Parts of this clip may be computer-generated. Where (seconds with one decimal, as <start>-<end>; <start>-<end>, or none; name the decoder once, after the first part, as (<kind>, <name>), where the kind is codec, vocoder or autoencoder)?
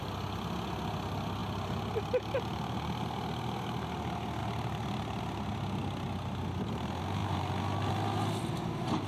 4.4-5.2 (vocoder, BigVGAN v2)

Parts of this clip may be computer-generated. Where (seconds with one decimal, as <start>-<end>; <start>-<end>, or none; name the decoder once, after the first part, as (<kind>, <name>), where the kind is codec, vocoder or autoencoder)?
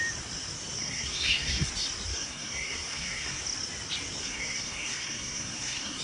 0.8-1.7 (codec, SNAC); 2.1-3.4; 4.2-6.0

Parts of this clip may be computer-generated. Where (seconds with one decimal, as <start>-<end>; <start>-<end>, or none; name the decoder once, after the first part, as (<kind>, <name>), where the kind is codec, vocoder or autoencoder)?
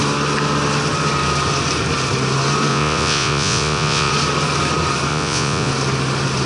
2.7-4.1 (vocoder, Vocos); 5.1-5.7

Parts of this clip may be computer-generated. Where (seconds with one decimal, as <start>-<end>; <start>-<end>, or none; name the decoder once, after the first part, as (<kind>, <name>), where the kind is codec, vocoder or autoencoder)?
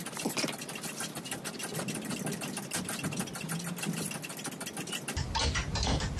none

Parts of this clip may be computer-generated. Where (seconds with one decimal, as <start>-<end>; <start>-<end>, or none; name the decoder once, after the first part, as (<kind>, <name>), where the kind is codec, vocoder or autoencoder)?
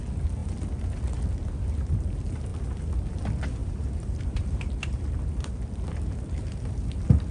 3.6-5.5 (vocoder, BigVGAN v2)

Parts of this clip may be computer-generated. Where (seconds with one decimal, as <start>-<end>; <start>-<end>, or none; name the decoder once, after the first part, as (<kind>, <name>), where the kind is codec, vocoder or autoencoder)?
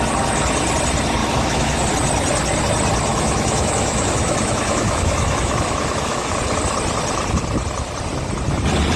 1.2-1.8 (autoencoder, DAC-VAE); 3.1-6.4